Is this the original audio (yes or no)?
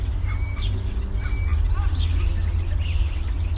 yes